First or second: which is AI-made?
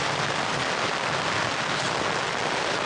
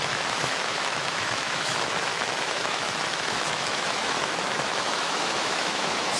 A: second